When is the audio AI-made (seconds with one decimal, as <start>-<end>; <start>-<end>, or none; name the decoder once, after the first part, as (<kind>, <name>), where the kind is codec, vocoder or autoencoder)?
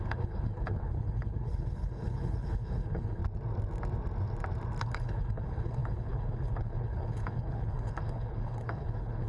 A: 0.0-3.2 (codec, HILCodec); 4.8-9.3